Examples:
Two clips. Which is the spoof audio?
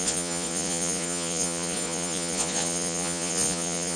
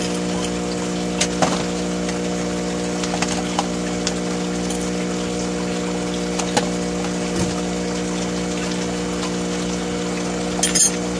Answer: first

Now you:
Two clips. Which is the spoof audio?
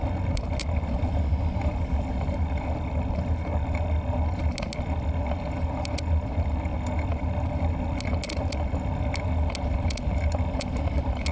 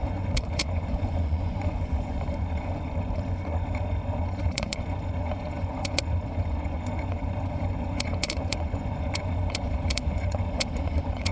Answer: second